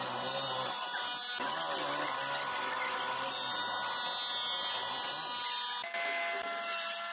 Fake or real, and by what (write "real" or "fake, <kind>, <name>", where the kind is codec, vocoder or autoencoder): real